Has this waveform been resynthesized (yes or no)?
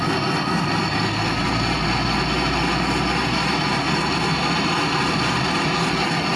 no